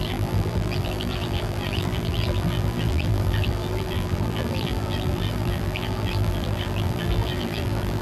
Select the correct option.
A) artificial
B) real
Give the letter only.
A